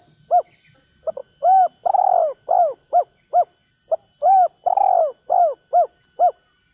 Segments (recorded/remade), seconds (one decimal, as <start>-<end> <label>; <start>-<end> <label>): 0.0-6.7 recorded